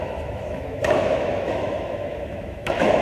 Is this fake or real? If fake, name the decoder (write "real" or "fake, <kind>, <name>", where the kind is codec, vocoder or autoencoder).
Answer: fake, autoencoder, DAC-VAE